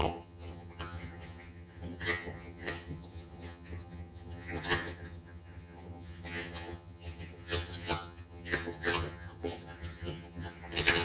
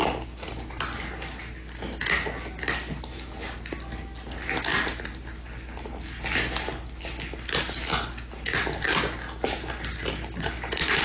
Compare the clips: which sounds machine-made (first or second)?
first